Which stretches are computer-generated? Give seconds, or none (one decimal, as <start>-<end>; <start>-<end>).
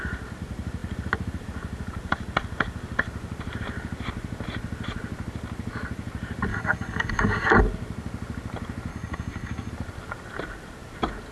6.5-7.6; 8.9-9.7